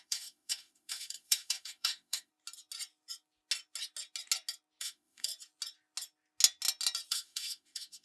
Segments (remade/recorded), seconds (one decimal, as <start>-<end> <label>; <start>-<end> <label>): 0.0-2.3 remade; 2.3-4.8 recorded; 4.8-5.3 remade; 5.3-7.1 recorded; 7.1-8.0 remade